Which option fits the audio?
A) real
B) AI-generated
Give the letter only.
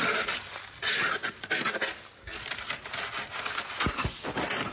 A